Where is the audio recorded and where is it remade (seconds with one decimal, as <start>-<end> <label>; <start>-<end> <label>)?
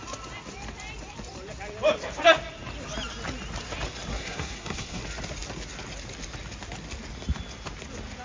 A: 0.0-4.1 recorded; 4.1-5.0 remade; 5.0-8.2 recorded